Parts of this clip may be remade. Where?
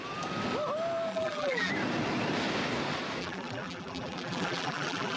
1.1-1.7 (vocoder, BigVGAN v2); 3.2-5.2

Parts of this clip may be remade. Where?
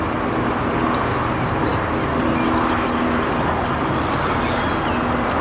none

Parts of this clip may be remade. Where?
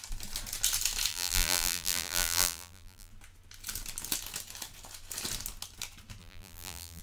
1.1-3.1 (vocoder, BigVGAN v2); 6.2-7.0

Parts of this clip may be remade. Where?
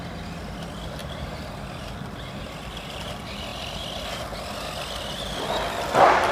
none